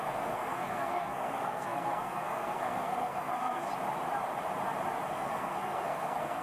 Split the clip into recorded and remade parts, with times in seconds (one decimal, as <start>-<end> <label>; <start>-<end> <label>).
0.0-3.7 remade; 3.7-5.1 recorded; 5.1-6.4 remade